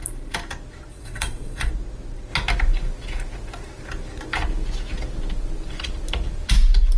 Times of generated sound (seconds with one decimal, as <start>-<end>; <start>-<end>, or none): 0.9-1.7